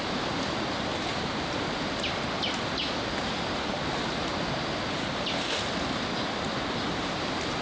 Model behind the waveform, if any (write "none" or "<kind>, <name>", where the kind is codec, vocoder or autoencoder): none